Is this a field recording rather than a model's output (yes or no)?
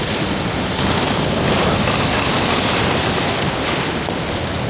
yes